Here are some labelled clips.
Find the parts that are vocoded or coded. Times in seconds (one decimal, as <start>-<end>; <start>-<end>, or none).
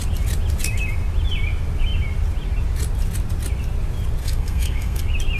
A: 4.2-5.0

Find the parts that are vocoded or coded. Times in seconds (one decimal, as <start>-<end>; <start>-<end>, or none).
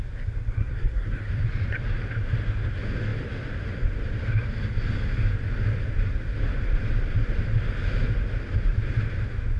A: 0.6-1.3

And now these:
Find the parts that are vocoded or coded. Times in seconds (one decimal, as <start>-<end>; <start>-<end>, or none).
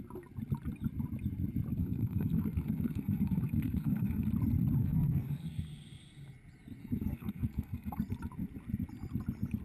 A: 1.8-4.3; 4.8-5.6; 6.8-8.0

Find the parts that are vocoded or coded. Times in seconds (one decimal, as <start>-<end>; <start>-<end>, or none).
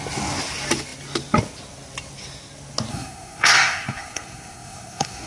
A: 2.9-5.3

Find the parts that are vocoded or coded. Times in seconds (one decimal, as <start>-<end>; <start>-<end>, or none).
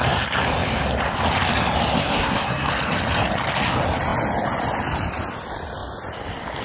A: 2.0-2.7